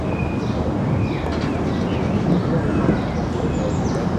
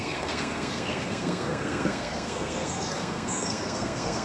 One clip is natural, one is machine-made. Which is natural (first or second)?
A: first